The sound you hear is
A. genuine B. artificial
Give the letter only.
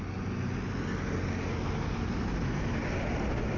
A